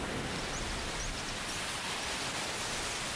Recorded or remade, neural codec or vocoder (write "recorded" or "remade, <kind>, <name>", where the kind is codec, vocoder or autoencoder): recorded